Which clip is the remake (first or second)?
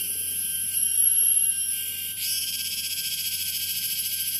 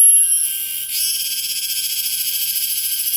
first